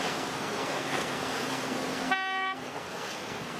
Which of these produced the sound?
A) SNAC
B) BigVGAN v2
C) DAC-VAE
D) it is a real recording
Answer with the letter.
A